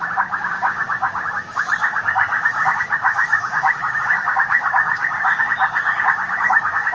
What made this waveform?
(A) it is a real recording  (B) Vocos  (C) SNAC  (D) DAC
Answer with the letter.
D